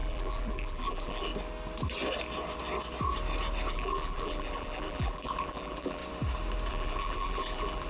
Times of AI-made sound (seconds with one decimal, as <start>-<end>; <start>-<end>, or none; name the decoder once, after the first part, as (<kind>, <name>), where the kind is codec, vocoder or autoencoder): 0.0-1.3 (vocoder, BigVGAN v2); 3.7-6.0; 6.7-7.9